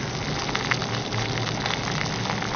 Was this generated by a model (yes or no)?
no